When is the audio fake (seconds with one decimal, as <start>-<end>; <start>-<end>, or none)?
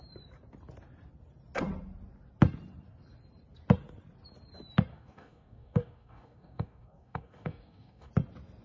4.9-8.1